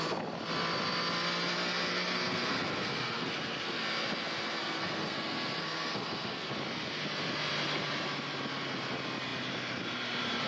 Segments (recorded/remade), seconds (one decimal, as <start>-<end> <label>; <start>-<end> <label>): 0.0-1.9 recorded; 1.9-3.8 remade; 3.8-4.6 recorded; 4.6-6.5 remade; 6.5-10.5 recorded